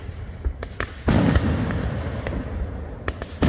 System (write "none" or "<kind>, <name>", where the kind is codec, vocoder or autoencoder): none